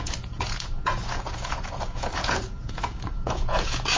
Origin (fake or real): fake